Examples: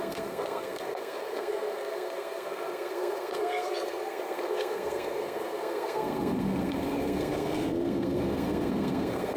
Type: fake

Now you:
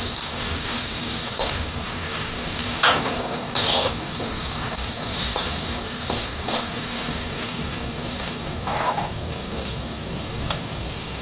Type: fake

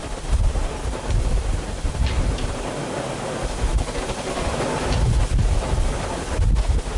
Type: real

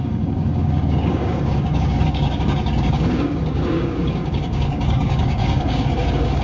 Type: fake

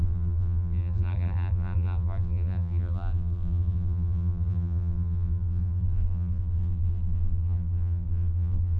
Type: fake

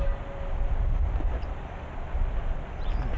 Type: real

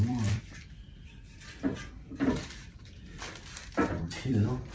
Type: fake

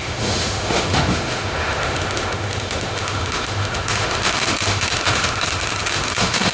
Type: fake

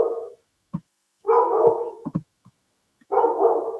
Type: fake